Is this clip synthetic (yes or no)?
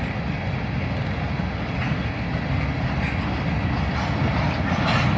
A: no